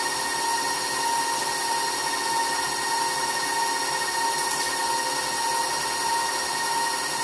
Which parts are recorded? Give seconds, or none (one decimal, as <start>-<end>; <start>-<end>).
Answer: 0.0-7.2